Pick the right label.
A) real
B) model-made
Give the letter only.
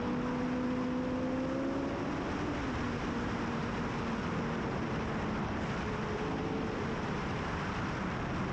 A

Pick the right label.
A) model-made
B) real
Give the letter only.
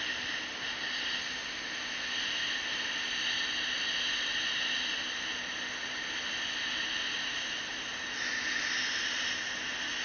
B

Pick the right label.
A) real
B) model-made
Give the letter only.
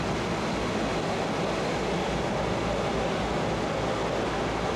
A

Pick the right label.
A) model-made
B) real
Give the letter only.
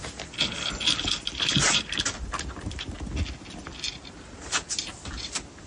B